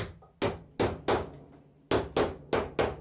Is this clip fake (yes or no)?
no